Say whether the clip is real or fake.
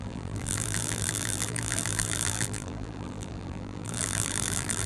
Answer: fake